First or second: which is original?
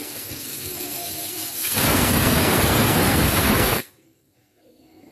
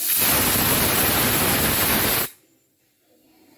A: second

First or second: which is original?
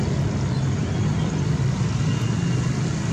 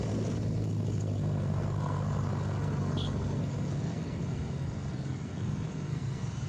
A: first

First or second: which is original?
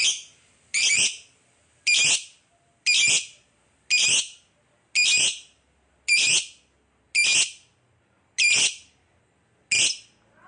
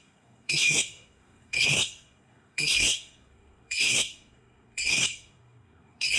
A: first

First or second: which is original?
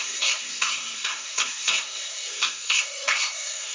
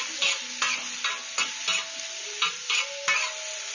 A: second